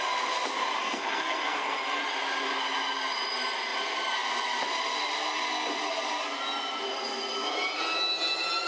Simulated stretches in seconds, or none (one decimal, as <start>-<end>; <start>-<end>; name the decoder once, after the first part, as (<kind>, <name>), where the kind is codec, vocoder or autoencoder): 0.8-2.0 (codec, SNAC)